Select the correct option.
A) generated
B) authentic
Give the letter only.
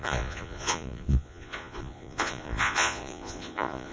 A